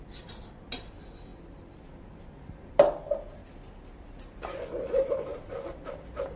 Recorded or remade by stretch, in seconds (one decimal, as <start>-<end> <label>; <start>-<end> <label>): 0.0-6.4 recorded